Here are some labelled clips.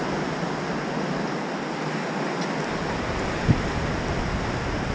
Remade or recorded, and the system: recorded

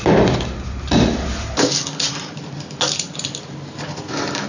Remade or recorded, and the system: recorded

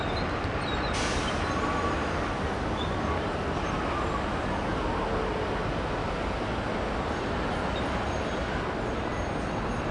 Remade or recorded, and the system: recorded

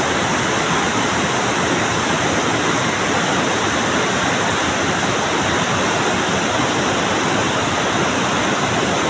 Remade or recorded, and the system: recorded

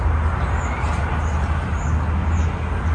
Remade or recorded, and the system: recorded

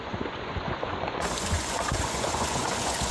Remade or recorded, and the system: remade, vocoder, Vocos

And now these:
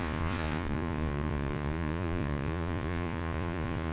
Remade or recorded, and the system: remade, vocoder, Vocos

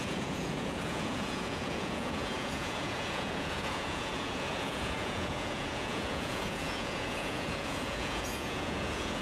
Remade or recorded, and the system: remade, vocoder, Vocos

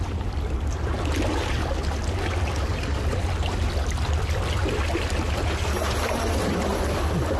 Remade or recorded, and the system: recorded